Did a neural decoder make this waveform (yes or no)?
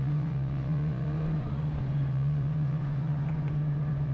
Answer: yes